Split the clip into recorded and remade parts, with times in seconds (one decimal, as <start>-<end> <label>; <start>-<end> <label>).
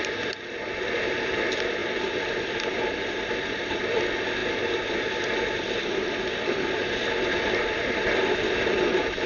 0.0-9.3 recorded